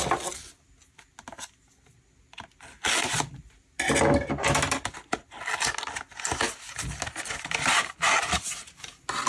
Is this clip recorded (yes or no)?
yes